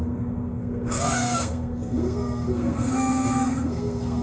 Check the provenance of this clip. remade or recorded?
remade